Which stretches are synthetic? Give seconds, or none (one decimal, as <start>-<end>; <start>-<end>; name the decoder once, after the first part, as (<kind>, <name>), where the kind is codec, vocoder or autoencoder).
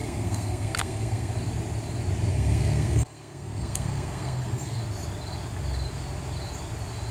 0.0-1.3 (codec, SNAC); 2.3-4.8